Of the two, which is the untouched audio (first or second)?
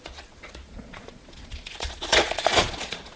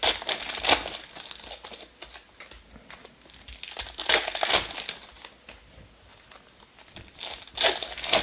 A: second